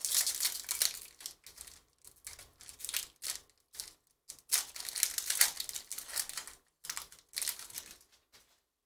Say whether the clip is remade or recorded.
recorded